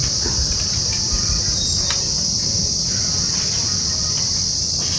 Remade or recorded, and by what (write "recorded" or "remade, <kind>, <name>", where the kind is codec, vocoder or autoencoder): recorded